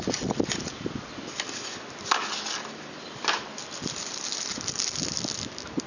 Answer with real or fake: real